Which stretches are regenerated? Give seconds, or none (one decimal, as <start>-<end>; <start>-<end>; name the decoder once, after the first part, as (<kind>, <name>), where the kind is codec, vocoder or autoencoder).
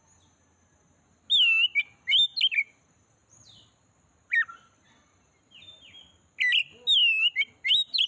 none